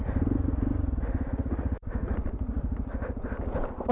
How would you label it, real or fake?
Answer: real